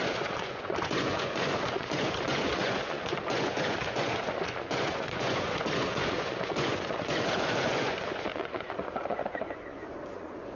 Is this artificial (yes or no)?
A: yes